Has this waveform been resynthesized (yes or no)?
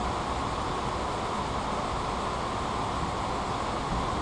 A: no